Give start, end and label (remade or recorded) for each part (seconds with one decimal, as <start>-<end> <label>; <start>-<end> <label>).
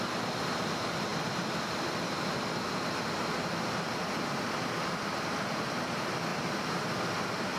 0.0-1.1 recorded; 1.1-2.3 remade; 2.3-4.0 recorded; 4.0-5.4 remade; 5.4-6.3 recorded; 6.3-6.8 remade; 6.8-7.6 recorded